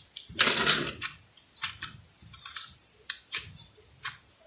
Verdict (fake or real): real